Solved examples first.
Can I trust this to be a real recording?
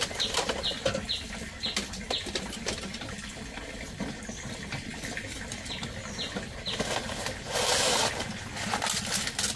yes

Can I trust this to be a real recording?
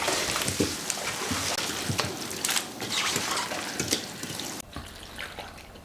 yes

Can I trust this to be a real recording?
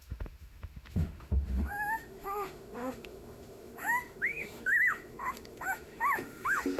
no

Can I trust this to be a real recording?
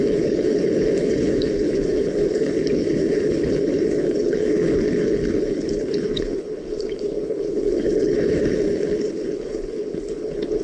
no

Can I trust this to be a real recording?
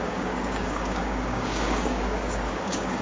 no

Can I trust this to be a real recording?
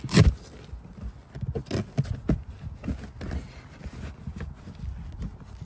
yes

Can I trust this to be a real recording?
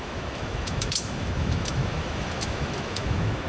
no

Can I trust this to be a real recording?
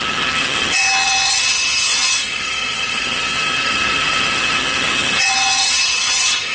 no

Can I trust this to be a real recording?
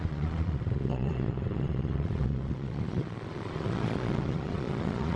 no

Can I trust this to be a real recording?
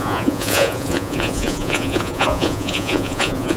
no